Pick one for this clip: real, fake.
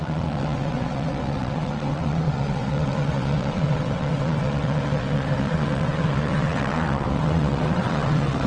fake